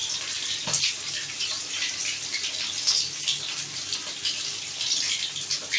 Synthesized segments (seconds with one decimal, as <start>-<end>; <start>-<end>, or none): 1.3-2.0